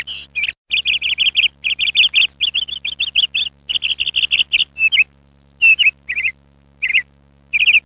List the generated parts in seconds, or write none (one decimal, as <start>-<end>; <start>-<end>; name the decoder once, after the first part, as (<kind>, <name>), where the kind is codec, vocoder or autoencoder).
none